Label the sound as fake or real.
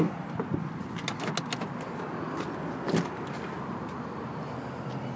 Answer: real